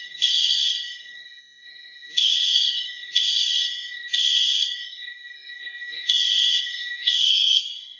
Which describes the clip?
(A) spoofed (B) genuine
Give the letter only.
A